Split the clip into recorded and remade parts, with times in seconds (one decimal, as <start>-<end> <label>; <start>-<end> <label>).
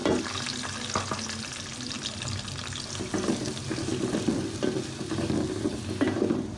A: 0.0-6.6 recorded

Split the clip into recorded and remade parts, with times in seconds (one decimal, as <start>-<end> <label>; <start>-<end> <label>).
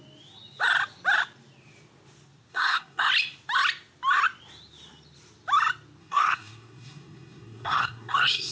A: 0.0-2.5 recorded; 2.5-3.1 remade; 3.1-6.0 recorded; 6.0-8.5 remade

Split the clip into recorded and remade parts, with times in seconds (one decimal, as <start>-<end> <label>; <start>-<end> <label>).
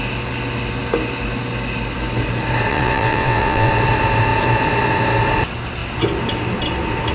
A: 0.0-2.7 recorded; 2.7-3.7 remade; 3.7-7.1 recorded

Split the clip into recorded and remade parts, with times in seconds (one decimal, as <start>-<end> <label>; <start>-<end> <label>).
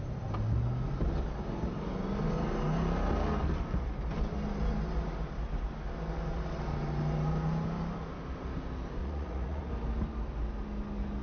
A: 0.0-9.0 recorded; 9.0-9.7 remade; 9.7-11.2 recorded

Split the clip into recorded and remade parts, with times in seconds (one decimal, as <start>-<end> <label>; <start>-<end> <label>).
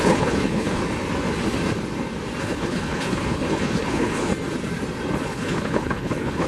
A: 0.0-0.8 remade; 0.8-2.4 recorded; 2.4-4.3 remade; 4.3-5.2 recorded; 5.2-6.5 remade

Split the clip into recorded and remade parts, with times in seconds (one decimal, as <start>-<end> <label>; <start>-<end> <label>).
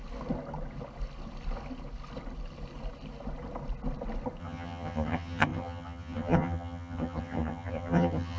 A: 0.0-4.4 recorded; 4.4-8.4 remade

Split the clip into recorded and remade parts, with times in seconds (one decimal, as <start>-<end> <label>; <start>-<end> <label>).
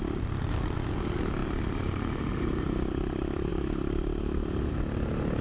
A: 0.0-3.5 recorded; 3.5-4.7 remade; 4.7-5.4 recorded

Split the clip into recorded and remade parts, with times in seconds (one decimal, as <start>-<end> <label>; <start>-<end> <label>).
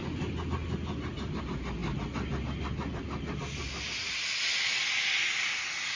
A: 0.0-6.0 recorded